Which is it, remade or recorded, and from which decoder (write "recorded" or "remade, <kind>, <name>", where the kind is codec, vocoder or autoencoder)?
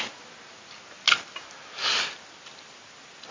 recorded